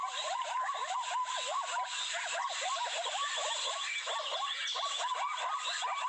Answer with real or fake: real